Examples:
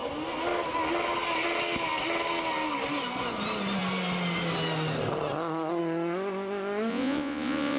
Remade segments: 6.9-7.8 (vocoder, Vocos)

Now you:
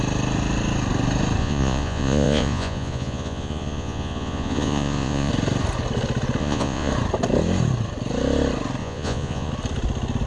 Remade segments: 1.4-5.3 (vocoder, Vocos); 6.4-6.9; 8.8-9.5